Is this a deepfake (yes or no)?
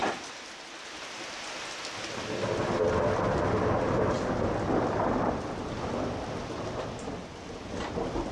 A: no